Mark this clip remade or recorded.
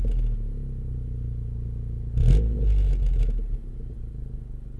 recorded